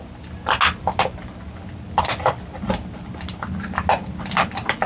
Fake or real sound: real